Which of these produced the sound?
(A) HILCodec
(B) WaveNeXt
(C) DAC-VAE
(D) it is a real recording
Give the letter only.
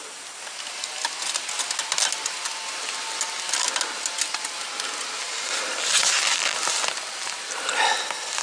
D